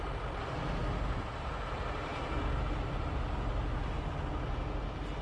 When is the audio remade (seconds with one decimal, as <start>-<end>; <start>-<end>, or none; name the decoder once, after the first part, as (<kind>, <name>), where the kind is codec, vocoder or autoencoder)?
none